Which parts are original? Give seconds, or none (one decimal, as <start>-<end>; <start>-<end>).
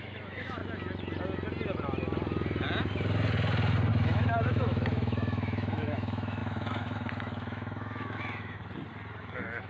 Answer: 0.6-3.9; 8.6-9.2